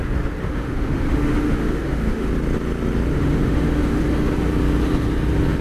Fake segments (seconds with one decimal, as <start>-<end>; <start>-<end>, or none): 0.4-2.3; 3.1-4.3